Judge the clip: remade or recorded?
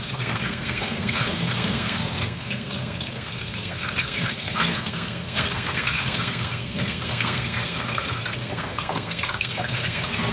remade